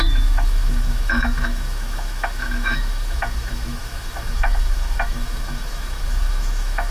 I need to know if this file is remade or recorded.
remade